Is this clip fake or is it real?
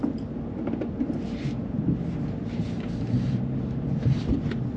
fake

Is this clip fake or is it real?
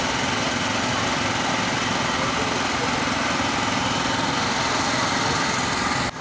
real